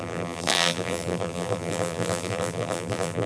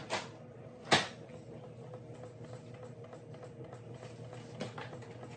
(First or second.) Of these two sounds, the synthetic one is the first